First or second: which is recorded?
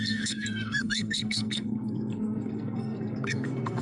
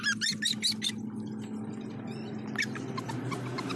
second